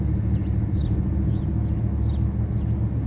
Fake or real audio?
real